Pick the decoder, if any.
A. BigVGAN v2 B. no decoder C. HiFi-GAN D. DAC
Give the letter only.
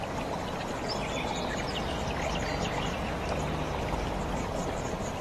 B